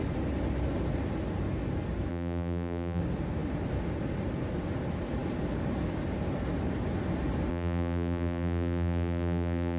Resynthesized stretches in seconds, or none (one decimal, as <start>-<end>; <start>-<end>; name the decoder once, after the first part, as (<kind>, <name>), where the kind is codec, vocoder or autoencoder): 2.1-3.0 (vocoder, BigVGAN v2); 7.5-9.8